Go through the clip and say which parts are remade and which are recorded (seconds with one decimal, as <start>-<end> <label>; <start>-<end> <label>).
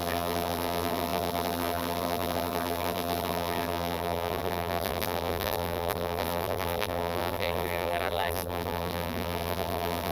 0.0-10.1 remade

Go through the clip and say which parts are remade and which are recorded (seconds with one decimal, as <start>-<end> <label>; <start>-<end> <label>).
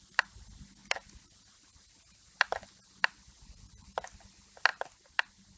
0.0-0.8 recorded; 0.8-4.2 remade; 4.2-4.7 recorded; 4.7-5.6 remade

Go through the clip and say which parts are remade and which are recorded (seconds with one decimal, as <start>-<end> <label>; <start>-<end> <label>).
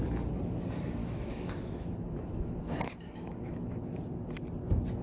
0.0-1.0 recorded; 1.0-4.0 remade; 4.0-5.0 recorded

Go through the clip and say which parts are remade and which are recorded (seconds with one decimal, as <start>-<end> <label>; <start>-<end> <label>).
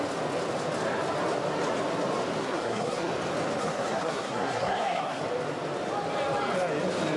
0.0-2.4 recorded; 2.4-3.1 remade; 3.1-3.6 recorded; 3.6-5.2 remade; 5.2-7.2 recorded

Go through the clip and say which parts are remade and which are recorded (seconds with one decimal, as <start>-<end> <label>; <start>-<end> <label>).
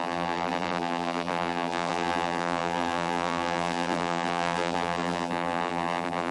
0.0-6.3 remade